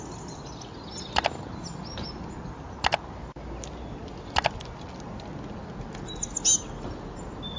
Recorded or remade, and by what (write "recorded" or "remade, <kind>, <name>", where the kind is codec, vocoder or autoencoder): recorded